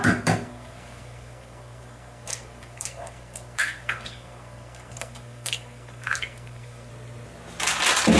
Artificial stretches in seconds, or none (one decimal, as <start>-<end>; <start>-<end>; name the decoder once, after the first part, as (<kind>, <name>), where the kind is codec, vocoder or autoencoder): 0.0-6.9 (codec, SNAC)